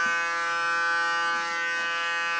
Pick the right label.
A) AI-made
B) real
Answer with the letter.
B